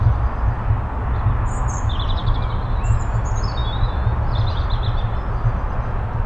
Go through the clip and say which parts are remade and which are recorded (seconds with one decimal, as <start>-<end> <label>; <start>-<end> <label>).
0.0-6.3 recorded